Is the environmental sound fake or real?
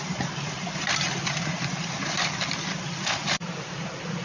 fake